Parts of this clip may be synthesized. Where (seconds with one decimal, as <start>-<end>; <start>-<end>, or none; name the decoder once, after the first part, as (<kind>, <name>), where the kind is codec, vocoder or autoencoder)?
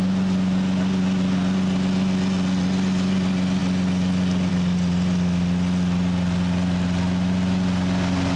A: none